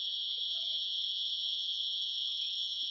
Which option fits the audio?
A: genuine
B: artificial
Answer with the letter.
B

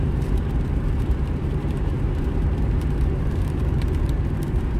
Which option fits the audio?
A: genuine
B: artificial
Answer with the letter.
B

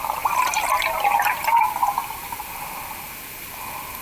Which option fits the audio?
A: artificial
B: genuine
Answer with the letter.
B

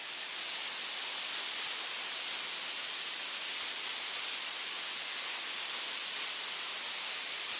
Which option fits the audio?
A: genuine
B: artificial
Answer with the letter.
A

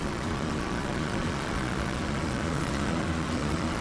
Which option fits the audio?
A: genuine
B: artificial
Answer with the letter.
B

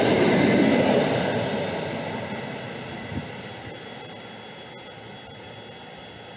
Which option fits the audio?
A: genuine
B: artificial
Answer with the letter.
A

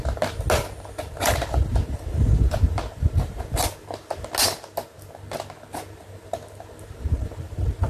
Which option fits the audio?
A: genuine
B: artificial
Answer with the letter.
A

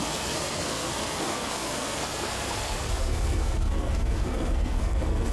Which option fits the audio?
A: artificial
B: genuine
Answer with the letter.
A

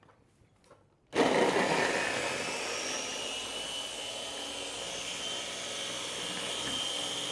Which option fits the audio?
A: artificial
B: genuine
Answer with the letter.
B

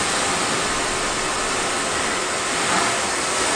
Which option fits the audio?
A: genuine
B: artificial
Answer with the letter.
B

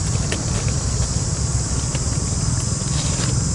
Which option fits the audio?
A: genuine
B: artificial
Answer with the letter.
A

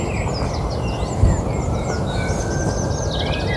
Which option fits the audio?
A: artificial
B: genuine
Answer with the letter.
B